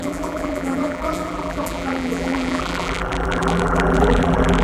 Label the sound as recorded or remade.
remade